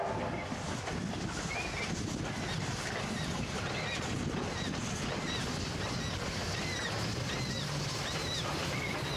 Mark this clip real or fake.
real